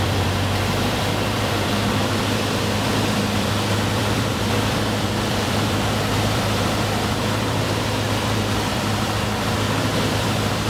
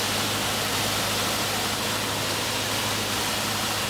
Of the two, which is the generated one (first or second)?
first